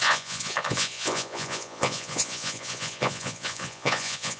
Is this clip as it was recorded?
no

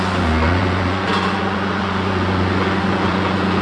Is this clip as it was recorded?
no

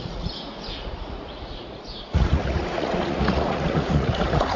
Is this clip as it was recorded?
no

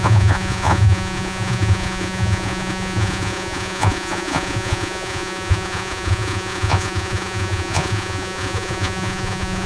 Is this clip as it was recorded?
no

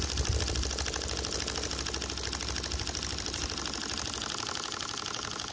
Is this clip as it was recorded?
yes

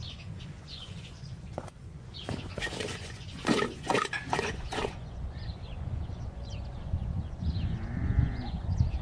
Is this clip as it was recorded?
no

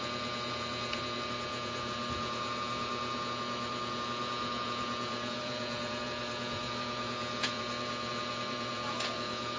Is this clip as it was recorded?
no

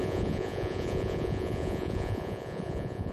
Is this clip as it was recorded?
no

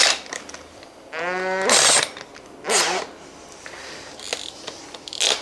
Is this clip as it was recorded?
yes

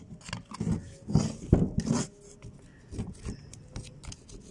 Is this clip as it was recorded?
yes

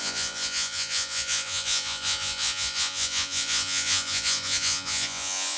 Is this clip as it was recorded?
no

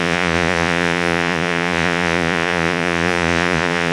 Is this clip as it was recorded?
no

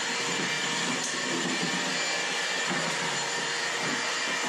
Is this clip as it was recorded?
yes